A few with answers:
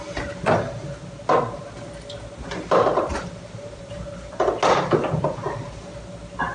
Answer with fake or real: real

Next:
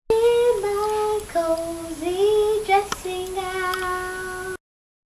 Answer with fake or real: real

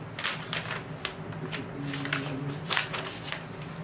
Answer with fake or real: real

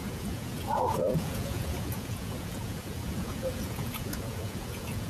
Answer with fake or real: fake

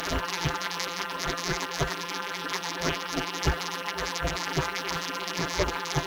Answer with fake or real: fake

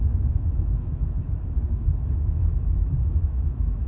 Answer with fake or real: fake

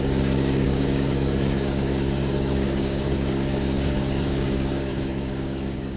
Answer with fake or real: fake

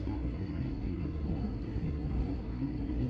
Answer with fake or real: fake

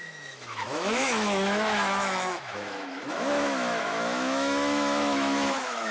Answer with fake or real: fake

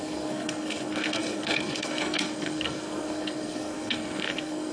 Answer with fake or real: fake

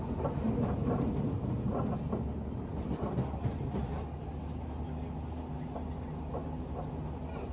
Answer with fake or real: real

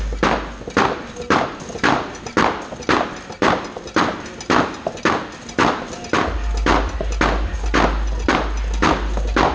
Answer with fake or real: real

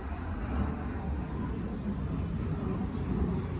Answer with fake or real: real